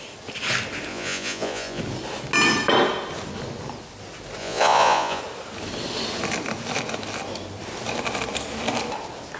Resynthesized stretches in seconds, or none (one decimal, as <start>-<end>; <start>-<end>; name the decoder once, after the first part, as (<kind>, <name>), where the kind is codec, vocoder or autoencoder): 0.9-1.8 (vocoder, Vocos); 4.4-5.2